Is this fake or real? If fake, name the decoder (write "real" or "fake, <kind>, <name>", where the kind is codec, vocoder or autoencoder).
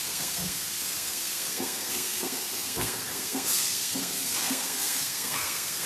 fake, codec, SNAC